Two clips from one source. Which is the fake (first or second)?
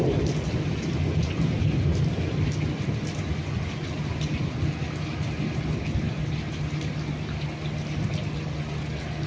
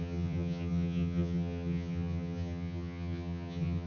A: second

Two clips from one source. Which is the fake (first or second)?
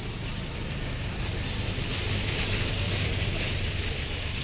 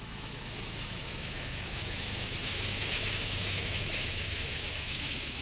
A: second